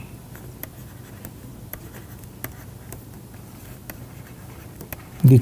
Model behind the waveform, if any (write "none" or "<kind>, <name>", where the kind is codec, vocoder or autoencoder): none